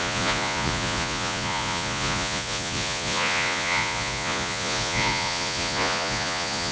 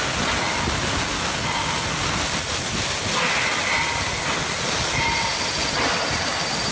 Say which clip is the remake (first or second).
first